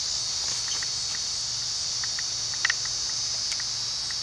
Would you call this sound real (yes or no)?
yes